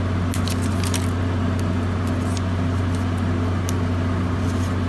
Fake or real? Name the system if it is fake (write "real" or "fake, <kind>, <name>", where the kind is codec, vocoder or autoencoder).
real